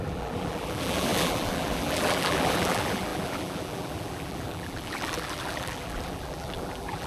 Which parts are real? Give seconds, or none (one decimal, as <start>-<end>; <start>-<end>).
none